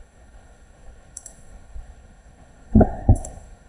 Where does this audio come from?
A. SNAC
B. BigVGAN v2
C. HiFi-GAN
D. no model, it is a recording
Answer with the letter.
A